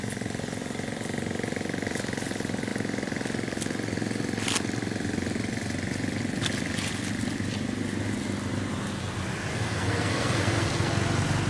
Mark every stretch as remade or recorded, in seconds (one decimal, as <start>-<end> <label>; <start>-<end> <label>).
0.0-9.5 recorded; 9.5-10.9 remade; 10.9-11.5 recorded